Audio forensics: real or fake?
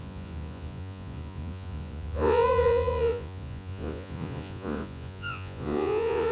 fake